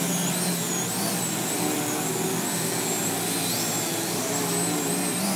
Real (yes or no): yes